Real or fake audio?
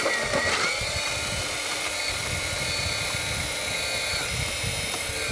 fake